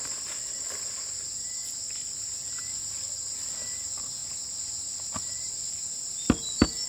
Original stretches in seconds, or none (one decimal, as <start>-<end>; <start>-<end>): 0.0-6.9